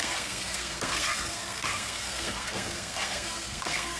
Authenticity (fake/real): fake